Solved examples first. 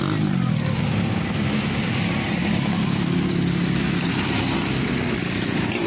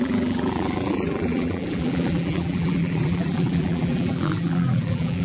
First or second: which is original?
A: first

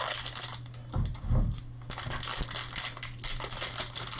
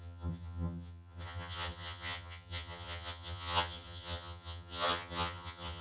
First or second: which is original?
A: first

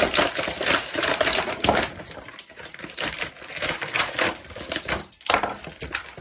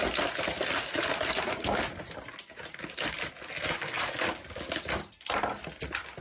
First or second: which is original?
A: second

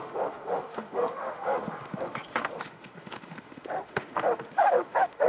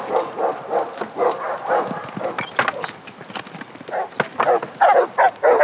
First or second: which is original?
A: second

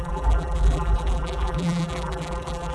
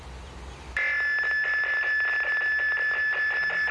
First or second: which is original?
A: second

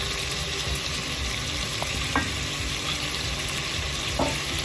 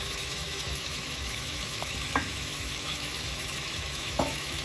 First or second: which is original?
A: first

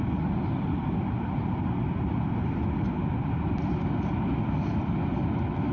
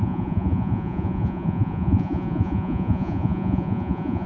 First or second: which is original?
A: first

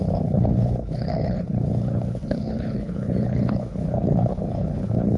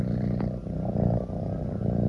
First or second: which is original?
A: second